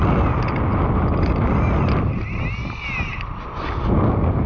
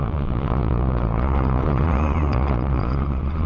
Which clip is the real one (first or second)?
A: first